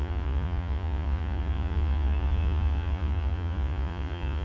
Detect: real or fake fake